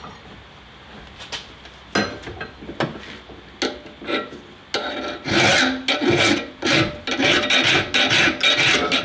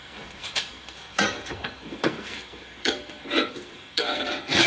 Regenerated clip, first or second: second